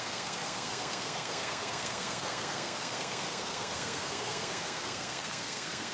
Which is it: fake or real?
fake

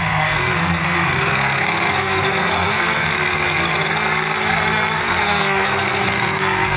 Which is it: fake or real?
fake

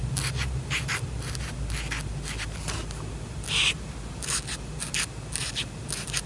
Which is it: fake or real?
real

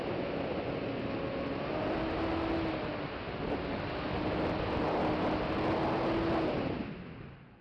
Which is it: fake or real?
real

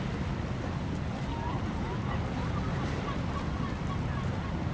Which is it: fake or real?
real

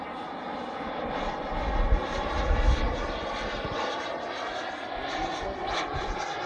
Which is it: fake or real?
real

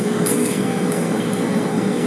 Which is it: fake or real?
fake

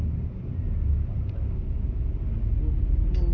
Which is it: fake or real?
real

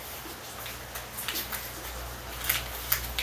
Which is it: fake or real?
real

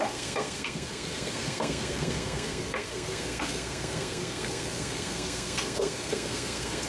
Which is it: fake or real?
fake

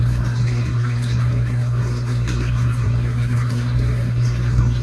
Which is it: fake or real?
fake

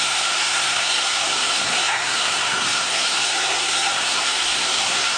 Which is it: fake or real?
fake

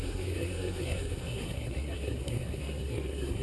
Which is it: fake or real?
fake